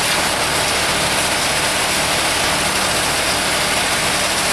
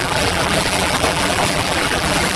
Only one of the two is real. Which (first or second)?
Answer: first